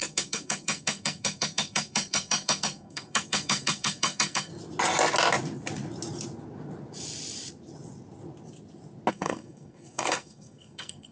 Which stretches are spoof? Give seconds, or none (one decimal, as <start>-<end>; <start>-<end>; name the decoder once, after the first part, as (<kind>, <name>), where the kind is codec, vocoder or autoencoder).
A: 0.0-4.5 (codec, SNAC); 9.1-11.1